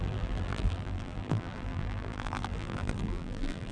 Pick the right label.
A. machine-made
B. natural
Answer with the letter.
A